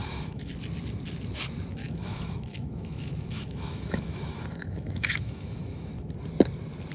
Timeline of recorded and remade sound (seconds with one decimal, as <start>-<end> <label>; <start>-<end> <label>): 0.0-0.5 remade; 0.5-1.8 recorded; 1.8-5.9 remade; 5.9-6.9 recorded